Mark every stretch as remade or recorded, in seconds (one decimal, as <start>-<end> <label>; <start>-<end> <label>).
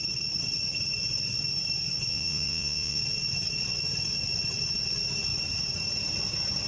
0.0-2.1 recorded; 2.1-3.0 remade; 3.0-6.7 recorded